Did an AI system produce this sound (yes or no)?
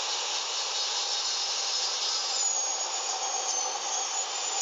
no